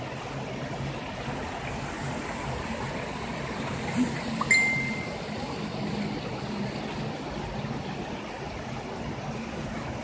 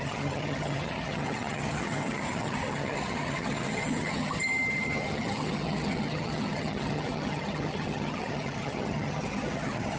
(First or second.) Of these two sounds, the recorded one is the first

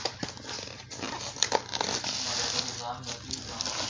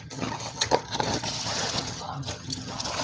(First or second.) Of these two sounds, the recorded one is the first